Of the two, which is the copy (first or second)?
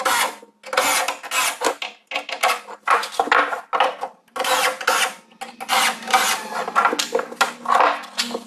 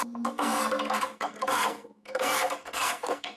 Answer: second